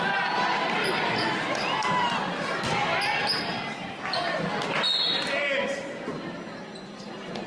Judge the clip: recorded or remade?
recorded